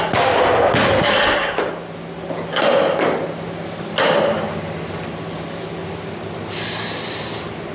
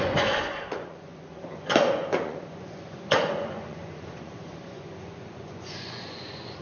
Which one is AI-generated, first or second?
second